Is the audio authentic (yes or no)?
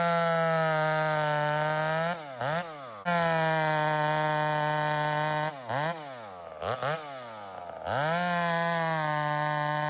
yes